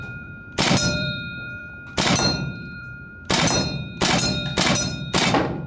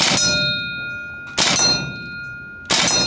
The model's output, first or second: first